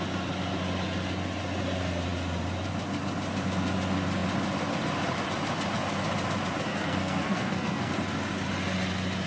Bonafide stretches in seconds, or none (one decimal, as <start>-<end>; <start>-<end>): 0.0-6.7; 7.9-9.3